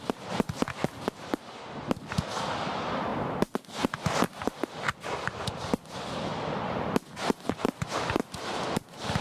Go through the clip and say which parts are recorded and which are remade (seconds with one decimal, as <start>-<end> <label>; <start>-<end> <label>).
0.0-9.2 recorded